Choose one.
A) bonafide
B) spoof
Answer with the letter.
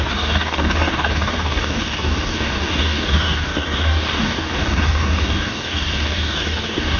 B